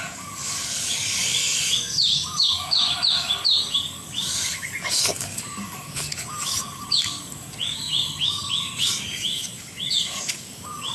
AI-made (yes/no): yes